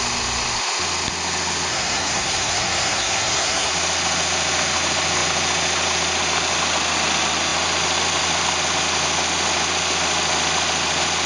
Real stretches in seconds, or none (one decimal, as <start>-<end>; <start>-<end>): 0.0-1.7; 3.7-11.3